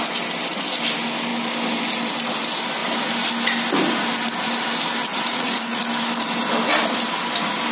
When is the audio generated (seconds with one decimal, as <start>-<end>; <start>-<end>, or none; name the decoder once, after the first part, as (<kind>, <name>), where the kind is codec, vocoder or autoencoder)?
5.1-5.8 (vocoder, Vocos)